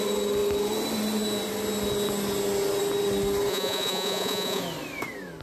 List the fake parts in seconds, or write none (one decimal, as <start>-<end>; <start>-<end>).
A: 3.5-4.6